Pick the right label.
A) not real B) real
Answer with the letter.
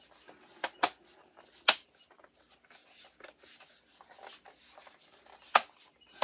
B